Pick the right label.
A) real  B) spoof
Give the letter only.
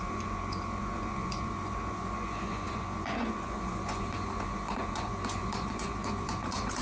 B